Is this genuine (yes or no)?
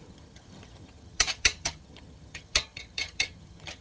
no